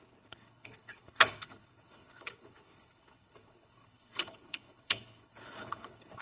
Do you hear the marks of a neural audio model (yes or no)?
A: yes